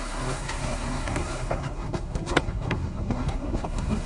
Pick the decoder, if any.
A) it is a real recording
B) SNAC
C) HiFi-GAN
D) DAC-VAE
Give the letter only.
B